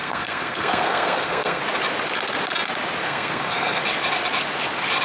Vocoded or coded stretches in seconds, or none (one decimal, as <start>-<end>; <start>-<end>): 0.0-1.6; 3.0-3.8